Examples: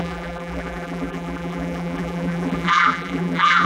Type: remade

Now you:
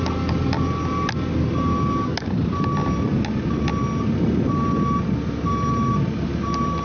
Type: recorded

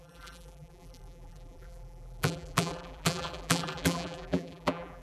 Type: remade